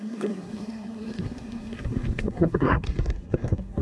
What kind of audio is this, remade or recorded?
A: remade